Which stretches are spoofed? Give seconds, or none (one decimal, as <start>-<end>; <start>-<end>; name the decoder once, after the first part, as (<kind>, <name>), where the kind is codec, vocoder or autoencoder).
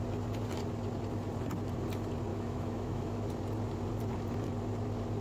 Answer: 2.3-3.3 (autoencoder, DAC-VAE)